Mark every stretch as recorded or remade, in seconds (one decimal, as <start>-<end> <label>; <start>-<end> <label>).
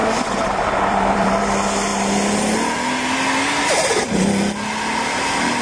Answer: 0.0-1.4 remade; 1.4-5.6 recorded